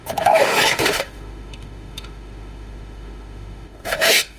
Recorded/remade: remade